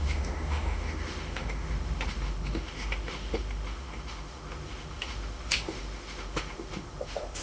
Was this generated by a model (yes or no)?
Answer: yes